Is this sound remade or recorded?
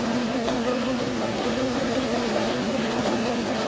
remade